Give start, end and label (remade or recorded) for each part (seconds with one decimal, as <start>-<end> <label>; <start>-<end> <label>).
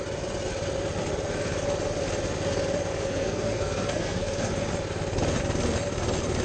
0.0-2.9 recorded; 2.9-4.5 remade; 4.5-6.4 recorded